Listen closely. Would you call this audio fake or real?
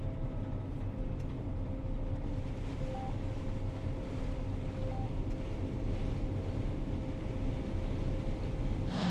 real